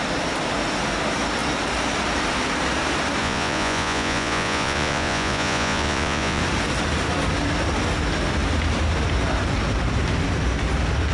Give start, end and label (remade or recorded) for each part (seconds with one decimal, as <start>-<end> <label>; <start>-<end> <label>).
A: 0.0-3.2 recorded; 3.2-6.4 remade; 6.4-11.1 recorded